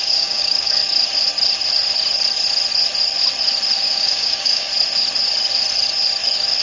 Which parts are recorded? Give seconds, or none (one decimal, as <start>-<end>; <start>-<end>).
0.8-3.8; 4.7-6.6